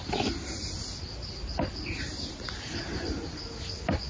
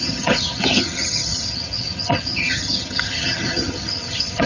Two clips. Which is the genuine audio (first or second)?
first